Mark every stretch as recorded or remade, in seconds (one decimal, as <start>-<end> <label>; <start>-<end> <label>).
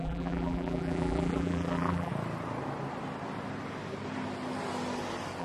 0.0-2.1 remade; 2.1-5.4 recorded